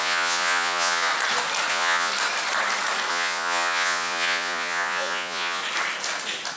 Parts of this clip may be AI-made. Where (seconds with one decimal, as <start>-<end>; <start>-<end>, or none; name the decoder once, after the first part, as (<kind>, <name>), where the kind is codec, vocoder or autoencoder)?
0.0-1.1 (vocoder, Vocos); 1.7-2.1; 3.1-5.6